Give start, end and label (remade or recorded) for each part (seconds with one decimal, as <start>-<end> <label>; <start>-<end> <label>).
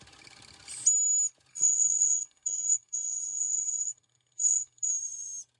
0.0-1.5 recorded; 1.5-4.9 remade; 4.9-5.6 recorded